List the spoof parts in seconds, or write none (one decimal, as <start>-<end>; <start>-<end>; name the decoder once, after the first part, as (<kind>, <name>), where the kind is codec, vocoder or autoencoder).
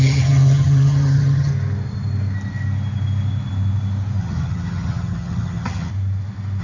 0.0-1.5 (vocoder, HiFi-GAN); 4.2-5.9